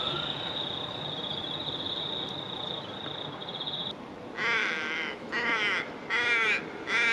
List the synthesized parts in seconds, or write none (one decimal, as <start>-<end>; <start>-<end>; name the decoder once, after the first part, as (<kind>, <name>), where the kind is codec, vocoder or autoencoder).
4.6-5.3 (autoencoder, DAC-VAE)